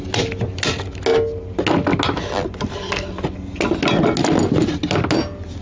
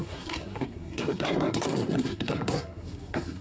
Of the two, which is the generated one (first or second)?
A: second